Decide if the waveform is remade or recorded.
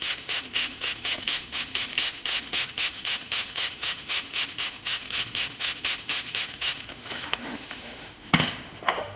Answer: remade